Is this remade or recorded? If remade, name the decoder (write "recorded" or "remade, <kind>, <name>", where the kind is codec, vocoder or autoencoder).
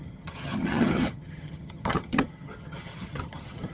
remade, vocoder, HiFi-GAN